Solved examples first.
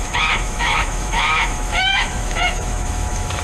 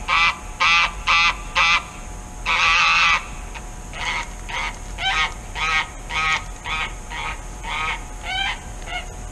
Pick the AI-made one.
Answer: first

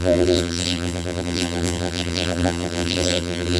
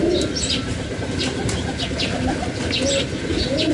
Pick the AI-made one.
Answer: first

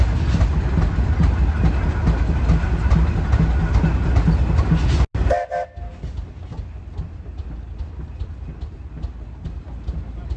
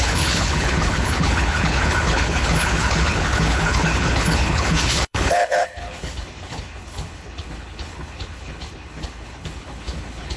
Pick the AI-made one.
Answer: second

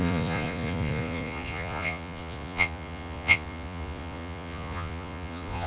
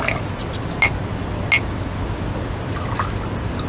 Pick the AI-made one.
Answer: first